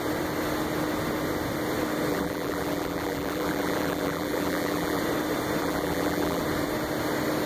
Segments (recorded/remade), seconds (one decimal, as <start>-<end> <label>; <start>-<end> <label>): 0.0-2.1 recorded; 2.1-5.0 remade; 5.0-5.6 recorded; 5.6-6.4 remade; 6.4-7.5 recorded